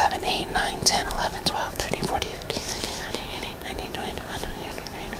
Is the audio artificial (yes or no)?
yes